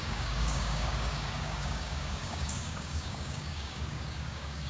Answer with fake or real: fake